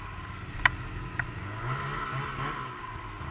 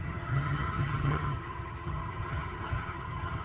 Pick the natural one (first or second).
first